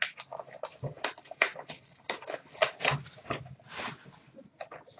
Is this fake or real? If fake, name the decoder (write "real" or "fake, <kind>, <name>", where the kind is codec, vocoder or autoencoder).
real